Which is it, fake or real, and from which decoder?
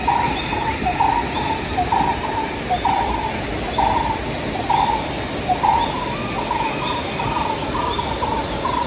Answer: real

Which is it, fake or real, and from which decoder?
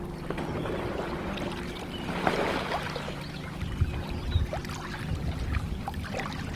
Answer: real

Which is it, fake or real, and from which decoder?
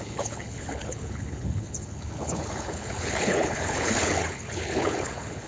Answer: fake, codec, HILCodec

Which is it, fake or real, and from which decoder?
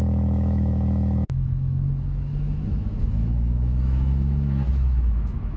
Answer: fake, autoencoder, DAC-VAE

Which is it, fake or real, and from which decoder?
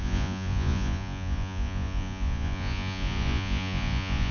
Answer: fake, vocoder, Vocos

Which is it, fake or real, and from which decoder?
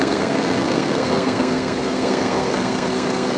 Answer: fake, codec, SNAC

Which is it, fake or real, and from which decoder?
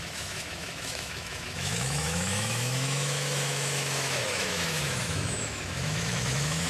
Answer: fake, autoencoder, DAC-VAE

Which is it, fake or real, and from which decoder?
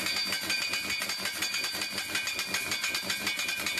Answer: real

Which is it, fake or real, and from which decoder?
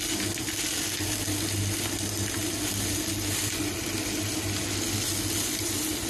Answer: real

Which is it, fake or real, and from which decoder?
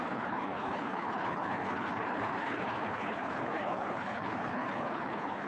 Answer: fake, codec, HILCodec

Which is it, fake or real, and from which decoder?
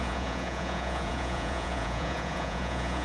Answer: fake, vocoder, Vocos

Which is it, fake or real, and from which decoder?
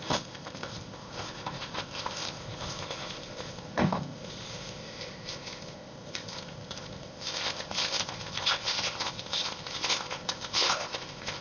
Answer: fake, codec, ZipCodec